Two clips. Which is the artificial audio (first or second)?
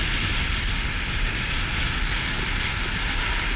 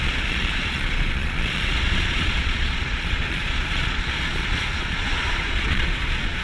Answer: second